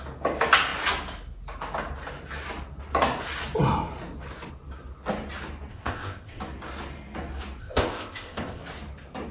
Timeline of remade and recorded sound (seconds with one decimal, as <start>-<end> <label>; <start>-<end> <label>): 0.0-5.7 recorded; 5.7-6.4 remade; 6.4-7.6 recorded; 7.6-8.6 remade; 8.6-9.3 recorded